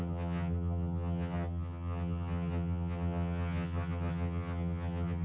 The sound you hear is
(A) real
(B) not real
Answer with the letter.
B